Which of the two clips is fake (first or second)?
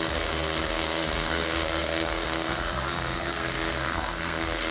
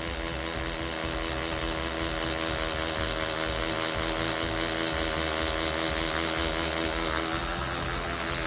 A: first